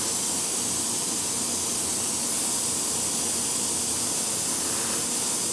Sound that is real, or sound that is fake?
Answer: real